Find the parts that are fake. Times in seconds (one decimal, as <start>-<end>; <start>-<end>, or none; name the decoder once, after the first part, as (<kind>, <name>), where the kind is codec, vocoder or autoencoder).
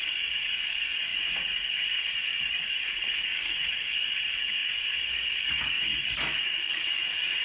0.0-7.4 (codec, DAC)